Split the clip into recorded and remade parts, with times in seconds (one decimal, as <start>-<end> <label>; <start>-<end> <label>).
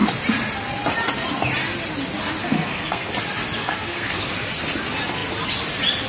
0.0-2.4 recorded; 2.4-3.1 remade; 3.1-3.6 recorded; 3.6-4.3 remade; 4.3-6.1 recorded